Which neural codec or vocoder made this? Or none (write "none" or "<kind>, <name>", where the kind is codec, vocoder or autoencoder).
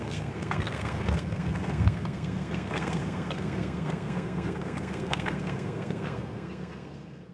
codec, SNAC